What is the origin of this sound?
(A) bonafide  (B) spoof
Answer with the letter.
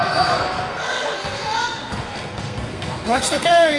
B